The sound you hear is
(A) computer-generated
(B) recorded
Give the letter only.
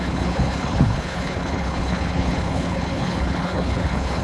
A